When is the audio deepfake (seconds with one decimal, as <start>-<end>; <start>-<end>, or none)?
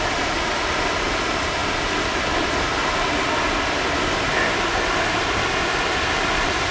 none